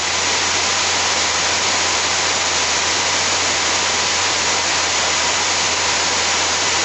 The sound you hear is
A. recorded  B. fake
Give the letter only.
A